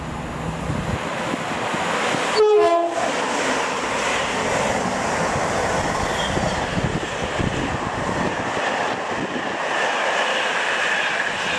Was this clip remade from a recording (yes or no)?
no